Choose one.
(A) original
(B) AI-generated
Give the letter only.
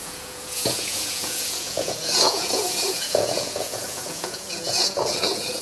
B